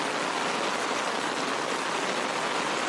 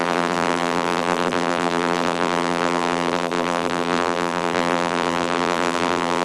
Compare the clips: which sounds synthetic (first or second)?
second